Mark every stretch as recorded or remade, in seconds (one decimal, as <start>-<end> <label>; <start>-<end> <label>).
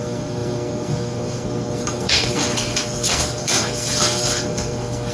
0.0-5.1 remade